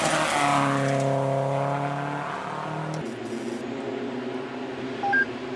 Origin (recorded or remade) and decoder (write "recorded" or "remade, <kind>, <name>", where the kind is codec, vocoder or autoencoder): recorded